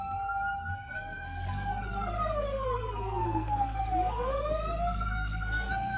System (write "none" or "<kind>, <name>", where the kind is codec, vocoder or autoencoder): codec, SNAC